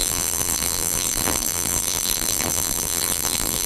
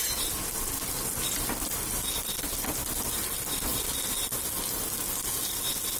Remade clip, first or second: first